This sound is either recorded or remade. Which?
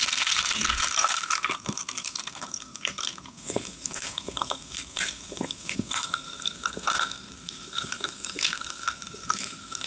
remade